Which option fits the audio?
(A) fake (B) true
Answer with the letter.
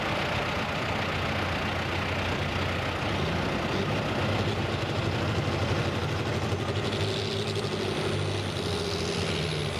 B